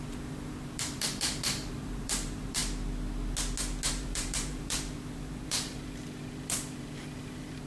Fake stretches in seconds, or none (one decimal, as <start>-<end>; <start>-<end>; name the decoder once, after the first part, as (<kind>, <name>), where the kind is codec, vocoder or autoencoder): 0.0-2.6 (vocoder, BigVGAN v2); 3.9-7.7